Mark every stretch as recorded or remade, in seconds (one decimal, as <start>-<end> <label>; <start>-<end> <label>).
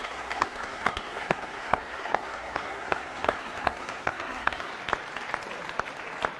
0.0-4.7 remade; 4.7-6.4 recorded